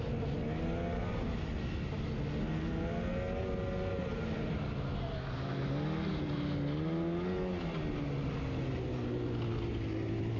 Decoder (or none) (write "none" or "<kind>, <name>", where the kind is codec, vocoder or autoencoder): none